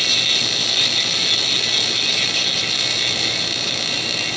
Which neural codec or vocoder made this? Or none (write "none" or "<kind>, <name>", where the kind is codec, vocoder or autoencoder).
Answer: none